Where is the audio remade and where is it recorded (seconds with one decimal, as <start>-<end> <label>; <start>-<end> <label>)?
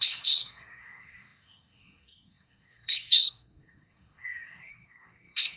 0.0-5.6 remade